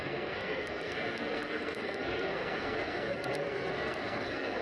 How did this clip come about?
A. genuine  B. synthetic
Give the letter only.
B